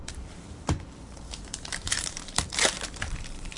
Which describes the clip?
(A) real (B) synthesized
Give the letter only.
B